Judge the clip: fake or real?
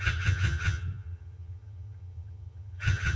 fake